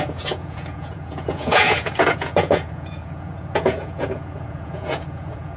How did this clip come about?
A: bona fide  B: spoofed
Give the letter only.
B